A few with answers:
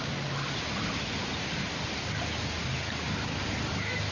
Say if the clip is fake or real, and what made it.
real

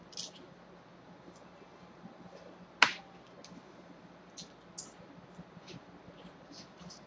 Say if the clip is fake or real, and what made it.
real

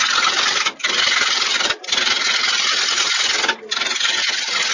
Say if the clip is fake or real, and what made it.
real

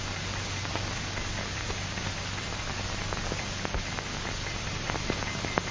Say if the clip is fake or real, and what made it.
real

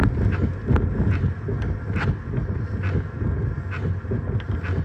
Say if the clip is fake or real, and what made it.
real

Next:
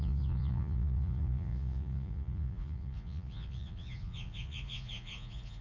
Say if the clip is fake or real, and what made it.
fake, vocoder, Vocos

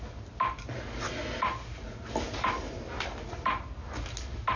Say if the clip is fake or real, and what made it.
real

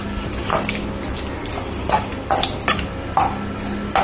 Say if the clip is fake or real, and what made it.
real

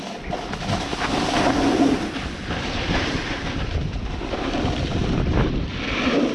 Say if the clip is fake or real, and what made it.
real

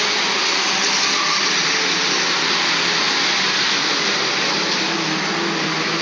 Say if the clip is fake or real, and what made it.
real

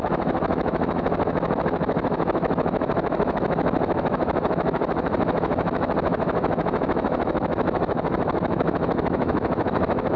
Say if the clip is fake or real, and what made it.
fake, autoencoder, DAC-VAE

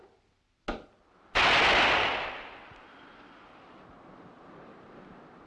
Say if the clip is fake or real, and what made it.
real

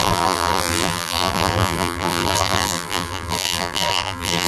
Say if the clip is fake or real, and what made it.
fake, vocoder, BigVGAN v2